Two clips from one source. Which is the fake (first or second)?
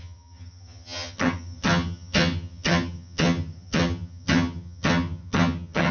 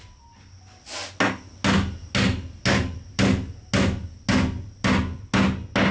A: first